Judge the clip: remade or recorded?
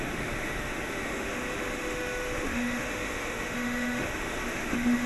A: remade